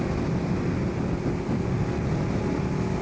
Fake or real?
real